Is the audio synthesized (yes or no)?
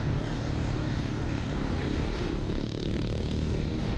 yes